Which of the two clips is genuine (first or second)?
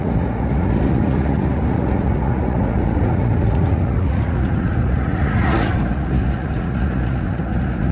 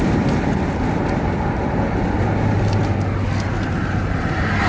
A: second